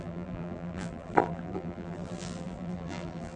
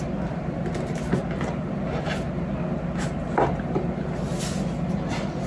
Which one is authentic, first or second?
second